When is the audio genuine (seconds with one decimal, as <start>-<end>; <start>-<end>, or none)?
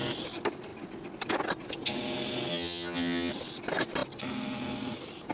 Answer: 0.0-2.5; 3.3-5.3